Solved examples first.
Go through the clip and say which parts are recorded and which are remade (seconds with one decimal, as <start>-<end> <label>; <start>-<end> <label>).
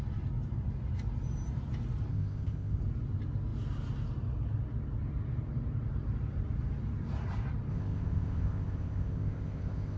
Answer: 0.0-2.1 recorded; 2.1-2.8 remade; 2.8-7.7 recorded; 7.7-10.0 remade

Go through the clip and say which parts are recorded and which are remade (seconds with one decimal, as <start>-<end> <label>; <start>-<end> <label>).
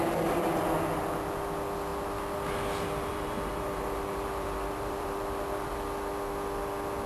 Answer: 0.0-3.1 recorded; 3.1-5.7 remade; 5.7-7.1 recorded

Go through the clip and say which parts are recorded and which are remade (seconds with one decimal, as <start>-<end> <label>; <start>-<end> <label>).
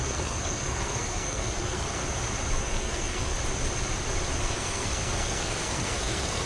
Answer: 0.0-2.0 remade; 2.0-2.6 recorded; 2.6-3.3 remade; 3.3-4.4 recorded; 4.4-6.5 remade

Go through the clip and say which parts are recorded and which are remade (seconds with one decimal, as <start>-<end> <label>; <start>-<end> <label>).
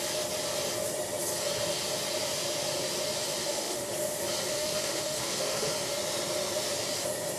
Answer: 0.0-3.4 recorded; 3.4-3.9 remade; 3.9-4.5 recorded; 4.5-5.7 remade; 5.7-7.4 recorded